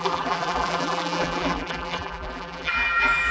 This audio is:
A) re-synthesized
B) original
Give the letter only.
A